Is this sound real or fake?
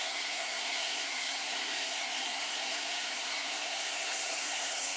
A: fake